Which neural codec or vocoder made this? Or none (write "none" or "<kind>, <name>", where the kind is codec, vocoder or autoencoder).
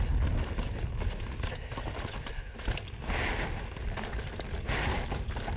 none